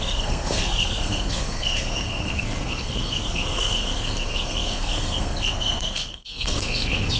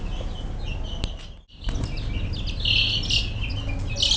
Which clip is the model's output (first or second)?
first